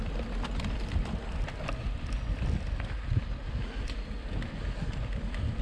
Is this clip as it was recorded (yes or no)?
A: yes